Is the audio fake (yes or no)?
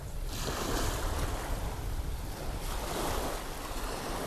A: no